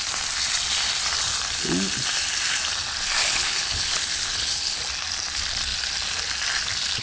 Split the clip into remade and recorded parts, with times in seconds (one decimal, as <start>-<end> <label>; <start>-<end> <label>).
0.0-3.2 recorded; 3.2-4.8 remade; 4.8-7.0 recorded